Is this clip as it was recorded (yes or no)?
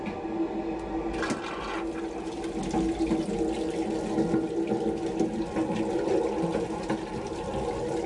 yes